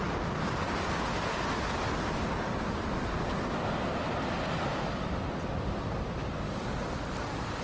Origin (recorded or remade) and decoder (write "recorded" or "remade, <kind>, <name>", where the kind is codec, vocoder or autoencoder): recorded